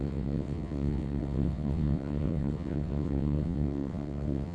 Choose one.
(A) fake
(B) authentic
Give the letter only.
A